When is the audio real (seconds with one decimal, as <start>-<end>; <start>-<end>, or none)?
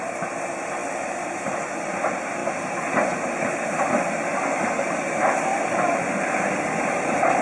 0.0-0.8; 1.8-5.5